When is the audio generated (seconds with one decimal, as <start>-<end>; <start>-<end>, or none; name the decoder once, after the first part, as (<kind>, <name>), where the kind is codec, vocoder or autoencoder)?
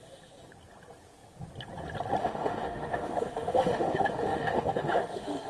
2.2-5.5 (autoencoder, DAC-VAE)